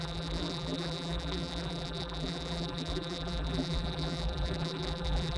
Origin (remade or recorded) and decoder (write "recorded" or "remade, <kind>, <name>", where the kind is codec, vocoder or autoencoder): remade, vocoder, BigVGAN v2